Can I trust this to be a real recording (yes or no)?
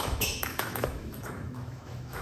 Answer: no